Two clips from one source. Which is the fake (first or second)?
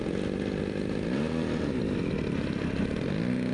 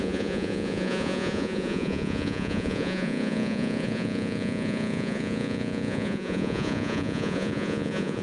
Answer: second